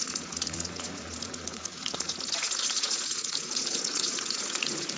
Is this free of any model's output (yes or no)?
no